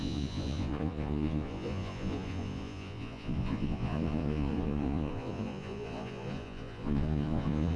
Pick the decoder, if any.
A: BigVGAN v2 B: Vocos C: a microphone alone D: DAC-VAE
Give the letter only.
B